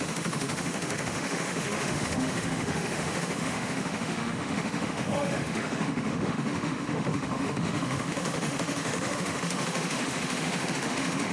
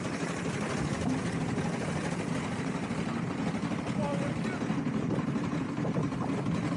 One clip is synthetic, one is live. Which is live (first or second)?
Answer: second